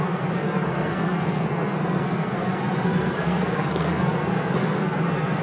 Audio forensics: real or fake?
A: fake